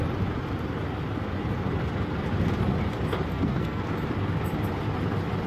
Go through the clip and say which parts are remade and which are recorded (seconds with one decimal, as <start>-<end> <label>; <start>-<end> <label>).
0.0-3.3 recorded; 3.3-3.8 remade; 3.8-5.5 recorded